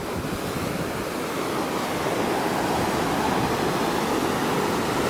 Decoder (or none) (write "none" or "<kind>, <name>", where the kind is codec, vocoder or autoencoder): none